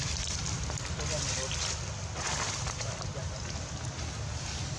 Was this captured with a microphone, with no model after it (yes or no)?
yes